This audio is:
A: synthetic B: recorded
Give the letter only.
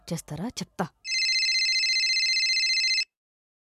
B